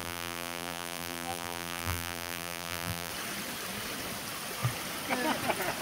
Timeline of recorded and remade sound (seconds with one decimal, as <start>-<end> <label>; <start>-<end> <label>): 0.0-3.1 remade; 3.1-5.8 recorded